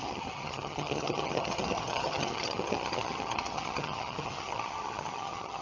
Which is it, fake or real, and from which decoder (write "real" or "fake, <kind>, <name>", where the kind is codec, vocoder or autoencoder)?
fake, vocoder, HiFi-GAN